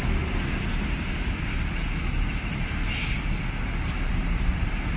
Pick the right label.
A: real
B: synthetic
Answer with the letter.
A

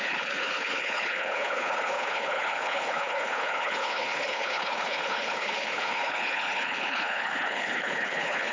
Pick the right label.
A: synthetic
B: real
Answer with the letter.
A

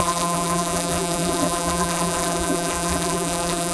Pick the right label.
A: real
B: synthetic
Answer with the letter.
B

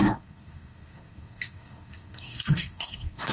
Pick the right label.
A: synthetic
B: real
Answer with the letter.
A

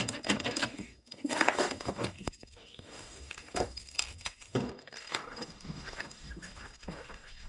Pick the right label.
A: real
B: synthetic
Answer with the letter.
B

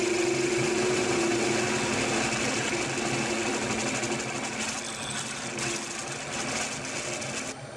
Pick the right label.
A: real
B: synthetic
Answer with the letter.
A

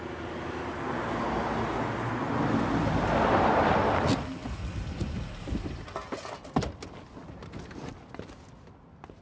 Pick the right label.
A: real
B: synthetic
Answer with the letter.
A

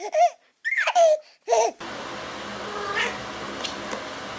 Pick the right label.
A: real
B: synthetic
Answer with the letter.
A